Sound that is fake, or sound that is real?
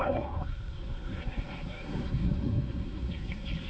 fake